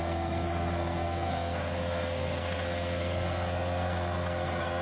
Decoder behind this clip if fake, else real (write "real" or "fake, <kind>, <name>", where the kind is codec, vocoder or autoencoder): fake, codec, SNAC